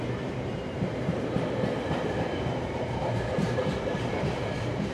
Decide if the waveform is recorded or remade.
remade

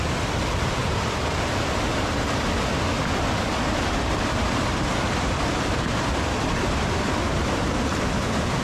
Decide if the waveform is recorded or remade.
remade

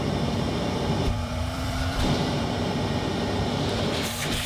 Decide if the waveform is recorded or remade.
remade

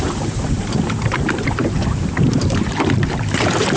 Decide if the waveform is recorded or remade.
remade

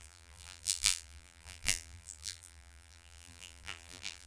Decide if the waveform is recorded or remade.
remade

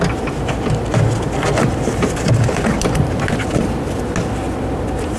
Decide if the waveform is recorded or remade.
recorded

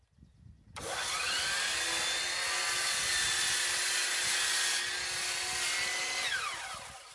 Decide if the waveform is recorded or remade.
recorded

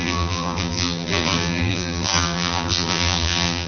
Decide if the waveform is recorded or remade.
remade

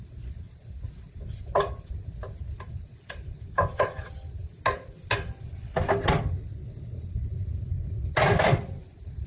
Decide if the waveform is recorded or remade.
recorded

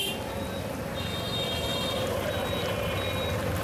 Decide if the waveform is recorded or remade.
recorded